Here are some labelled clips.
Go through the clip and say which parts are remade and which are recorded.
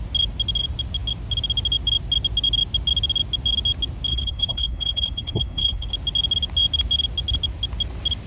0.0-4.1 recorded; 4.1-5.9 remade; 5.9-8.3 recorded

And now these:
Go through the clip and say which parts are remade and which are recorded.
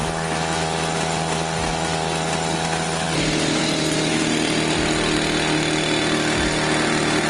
0.0-7.3 recorded